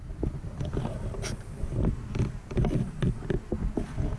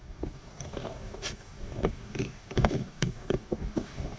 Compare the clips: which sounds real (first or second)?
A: first